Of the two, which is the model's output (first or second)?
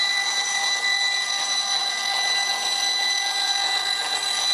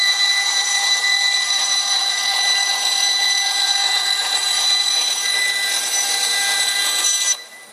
second